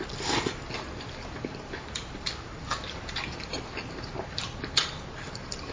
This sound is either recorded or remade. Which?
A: remade